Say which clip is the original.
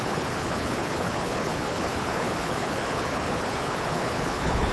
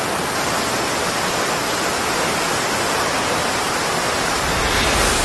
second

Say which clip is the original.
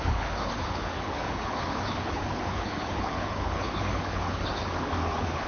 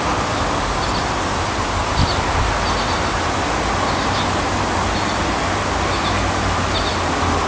second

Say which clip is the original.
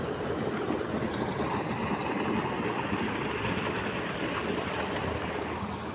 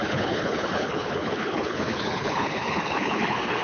first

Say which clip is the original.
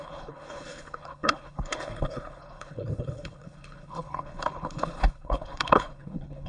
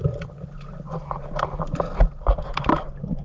second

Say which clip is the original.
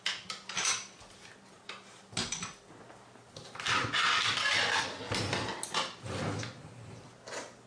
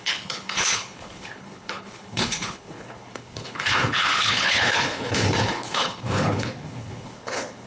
first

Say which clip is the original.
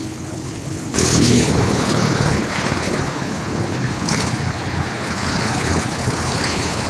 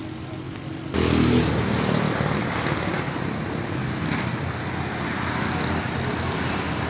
second